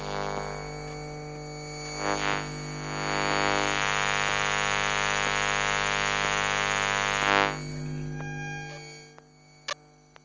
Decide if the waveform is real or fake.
real